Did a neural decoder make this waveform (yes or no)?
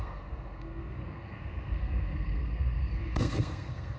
yes